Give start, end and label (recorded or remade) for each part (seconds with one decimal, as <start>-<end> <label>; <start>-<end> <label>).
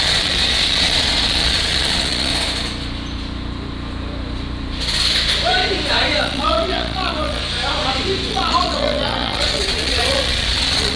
0.0-2.3 remade; 2.3-6.2 recorded; 6.2-7.4 remade; 7.4-8.3 recorded; 8.3-11.0 remade